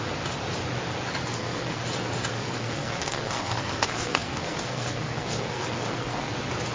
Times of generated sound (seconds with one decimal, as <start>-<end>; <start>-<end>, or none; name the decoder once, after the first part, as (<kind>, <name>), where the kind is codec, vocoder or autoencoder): 1.2-1.8 (codec, SNAC); 2.3-6.3